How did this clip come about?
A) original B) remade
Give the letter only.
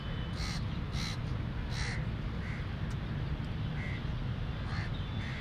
A